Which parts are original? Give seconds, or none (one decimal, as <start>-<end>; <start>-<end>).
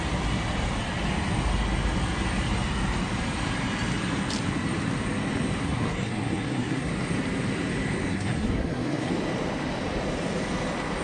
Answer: 0.0-5.6; 6.9-8.1; 9.1-11.0